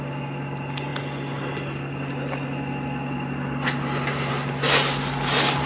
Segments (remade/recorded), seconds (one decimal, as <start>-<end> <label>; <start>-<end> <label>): 0.0-5.7 recorded